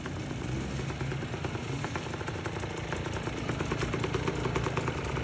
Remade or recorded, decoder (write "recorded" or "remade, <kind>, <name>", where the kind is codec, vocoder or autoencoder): recorded